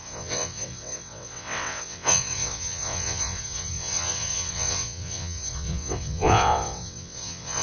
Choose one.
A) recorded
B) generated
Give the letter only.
B